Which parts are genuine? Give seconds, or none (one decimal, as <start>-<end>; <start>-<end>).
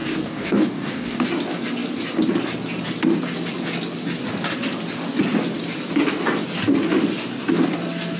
1.3-8.2